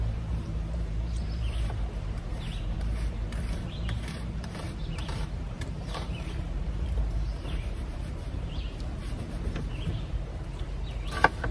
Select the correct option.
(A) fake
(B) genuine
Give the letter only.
A